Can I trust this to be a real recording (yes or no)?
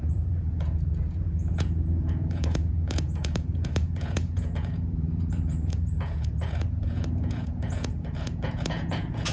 no